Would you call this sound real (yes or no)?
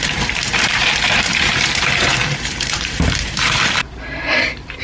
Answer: no